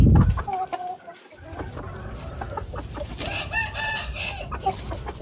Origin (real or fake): real